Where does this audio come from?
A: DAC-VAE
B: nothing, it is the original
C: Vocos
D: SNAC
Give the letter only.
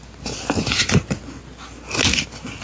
B